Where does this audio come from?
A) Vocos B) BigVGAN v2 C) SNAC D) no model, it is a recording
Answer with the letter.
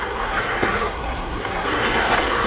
C